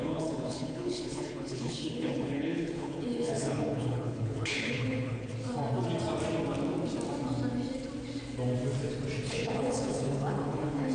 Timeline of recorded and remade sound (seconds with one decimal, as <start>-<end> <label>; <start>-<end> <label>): 0.0-5.3 remade; 5.3-9.3 recorded; 9.3-10.9 remade